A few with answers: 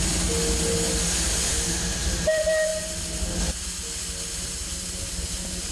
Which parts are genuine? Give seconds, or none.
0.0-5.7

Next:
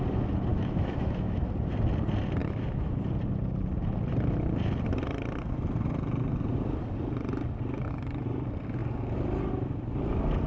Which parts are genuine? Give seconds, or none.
0.0-0.5; 1.5-2.4; 3.0-10.5

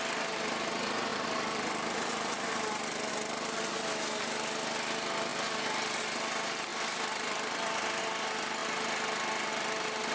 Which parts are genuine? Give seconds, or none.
0.0-1.1; 3.1-5.3; 6.0-6.7; 8.0-10.1

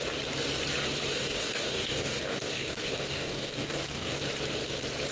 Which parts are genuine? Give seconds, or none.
0.0-1.1; 4.2-5.1

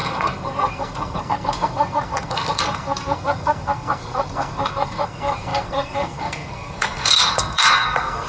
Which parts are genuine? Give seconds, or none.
none